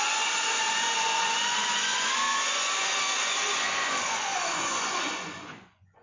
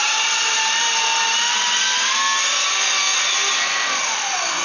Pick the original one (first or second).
second